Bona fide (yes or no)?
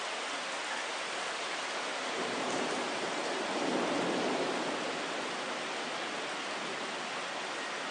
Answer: yes